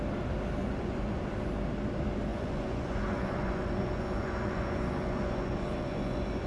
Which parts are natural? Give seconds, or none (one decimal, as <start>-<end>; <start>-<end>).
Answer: 0.0-0.6; 1.2-2.3